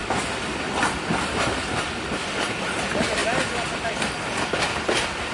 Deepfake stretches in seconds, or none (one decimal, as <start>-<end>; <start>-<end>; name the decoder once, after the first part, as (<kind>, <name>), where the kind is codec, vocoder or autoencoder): none